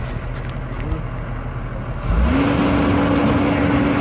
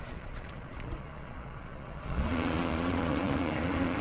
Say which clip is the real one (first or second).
first